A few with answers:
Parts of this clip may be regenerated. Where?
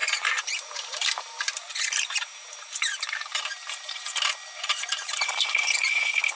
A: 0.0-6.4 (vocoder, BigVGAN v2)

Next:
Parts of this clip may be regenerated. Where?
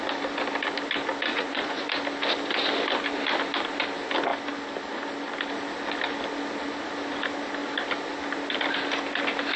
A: 1.3-1.9 (vocoder, Vocos)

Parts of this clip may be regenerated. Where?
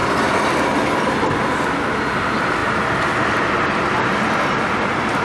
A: none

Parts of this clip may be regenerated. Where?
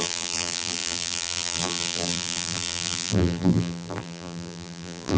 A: 0.0-5.2 (vocoder, BigVGAN v2)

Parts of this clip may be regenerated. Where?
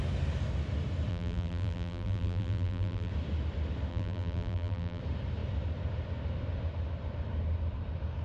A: 1.1-3.1 (vocoder, BigVGAN v2); 3.9-5.0